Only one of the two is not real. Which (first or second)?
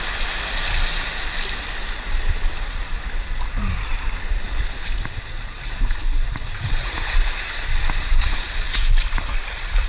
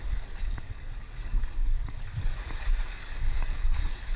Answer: second